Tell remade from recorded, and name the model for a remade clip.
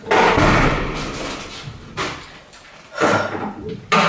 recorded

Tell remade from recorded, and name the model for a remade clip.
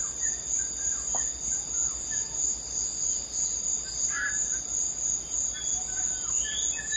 recorded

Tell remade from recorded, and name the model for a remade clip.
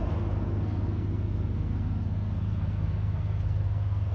remade, codec, SNAC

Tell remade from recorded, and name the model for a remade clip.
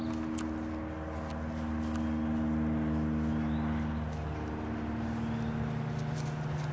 recorded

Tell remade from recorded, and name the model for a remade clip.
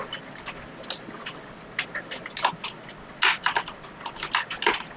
recorded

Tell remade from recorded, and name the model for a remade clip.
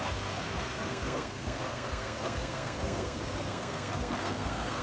remade, codec, SNAC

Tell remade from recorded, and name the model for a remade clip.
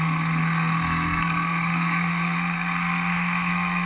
remade, codec, SNAC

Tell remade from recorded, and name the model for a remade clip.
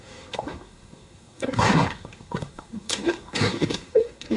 remade, codec, SNAC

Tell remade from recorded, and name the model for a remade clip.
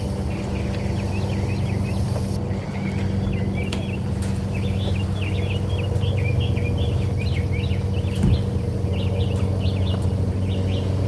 recorded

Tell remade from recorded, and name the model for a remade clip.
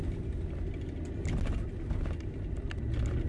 recorded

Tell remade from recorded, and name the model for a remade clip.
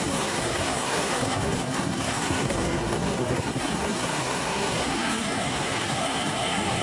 remade, codec, SNAC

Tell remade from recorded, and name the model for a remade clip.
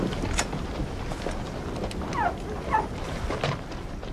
recorded